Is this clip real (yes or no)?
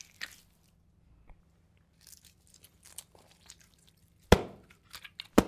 yes